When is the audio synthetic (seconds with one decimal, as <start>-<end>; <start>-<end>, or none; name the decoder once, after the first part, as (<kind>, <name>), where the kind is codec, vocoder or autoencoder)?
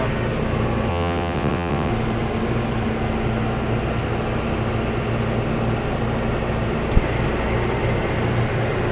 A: 0.9-1.9 (vocoder, WaveNeXt)